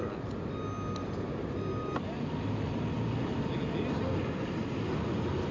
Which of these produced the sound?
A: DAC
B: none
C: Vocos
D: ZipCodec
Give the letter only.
B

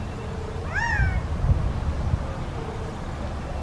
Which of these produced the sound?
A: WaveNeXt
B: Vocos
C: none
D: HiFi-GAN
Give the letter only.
C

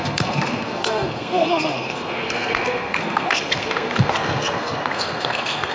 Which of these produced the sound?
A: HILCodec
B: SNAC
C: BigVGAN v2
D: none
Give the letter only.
B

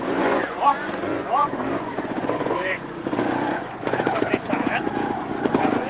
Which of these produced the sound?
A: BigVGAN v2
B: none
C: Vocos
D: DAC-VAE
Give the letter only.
C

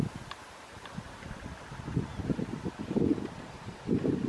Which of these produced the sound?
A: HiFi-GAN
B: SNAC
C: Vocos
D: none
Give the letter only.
D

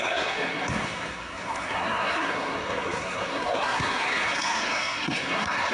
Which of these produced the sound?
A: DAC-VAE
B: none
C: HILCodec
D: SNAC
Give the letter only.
D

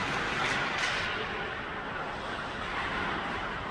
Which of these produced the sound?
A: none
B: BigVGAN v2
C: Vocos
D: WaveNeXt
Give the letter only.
B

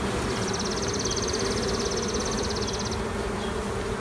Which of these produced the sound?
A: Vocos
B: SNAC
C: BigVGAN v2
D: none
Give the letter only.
D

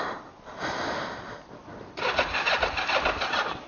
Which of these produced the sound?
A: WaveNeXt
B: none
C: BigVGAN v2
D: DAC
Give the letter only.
B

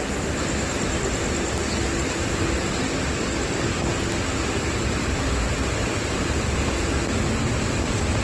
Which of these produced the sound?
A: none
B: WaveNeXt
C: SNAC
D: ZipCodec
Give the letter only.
A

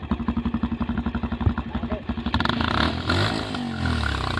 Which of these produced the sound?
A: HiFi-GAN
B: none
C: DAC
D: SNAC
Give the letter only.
B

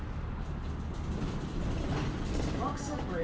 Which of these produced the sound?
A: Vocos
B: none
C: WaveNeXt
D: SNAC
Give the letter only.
B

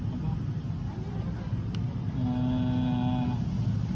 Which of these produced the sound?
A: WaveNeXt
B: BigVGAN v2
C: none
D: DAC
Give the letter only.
C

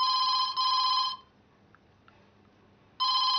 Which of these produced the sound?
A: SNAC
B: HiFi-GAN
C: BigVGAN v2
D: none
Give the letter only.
D